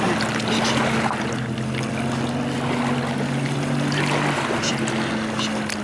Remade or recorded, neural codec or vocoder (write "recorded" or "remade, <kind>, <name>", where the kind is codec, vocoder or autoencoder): recorded